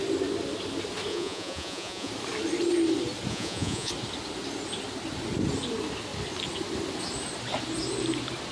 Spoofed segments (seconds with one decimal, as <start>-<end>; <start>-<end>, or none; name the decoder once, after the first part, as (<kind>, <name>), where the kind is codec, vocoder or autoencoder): 1.1-2.1 (vocoder, Vocos); 3.3-3.9